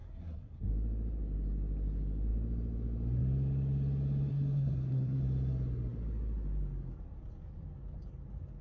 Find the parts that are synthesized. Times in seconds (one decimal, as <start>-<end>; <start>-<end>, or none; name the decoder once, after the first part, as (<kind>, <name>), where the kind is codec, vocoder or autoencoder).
0.0-0.7 (codec, SNAC); 4.3-5.2